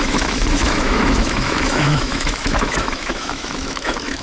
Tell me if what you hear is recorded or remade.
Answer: remade